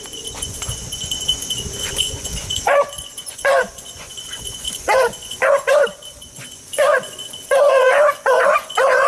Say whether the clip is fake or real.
fake